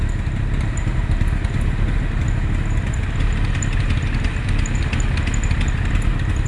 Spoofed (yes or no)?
no